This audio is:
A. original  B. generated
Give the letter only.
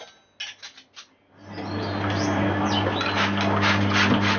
A